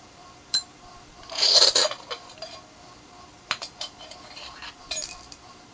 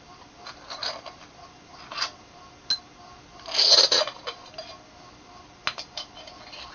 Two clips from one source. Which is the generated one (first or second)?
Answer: first